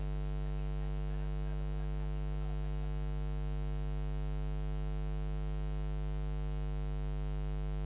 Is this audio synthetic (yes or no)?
no